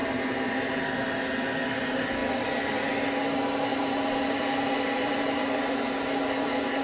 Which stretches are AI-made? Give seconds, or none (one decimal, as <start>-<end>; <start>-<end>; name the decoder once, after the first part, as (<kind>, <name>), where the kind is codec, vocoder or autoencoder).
0.0-0.8 (vocoder, BigVGAN v2); 3.7-6.8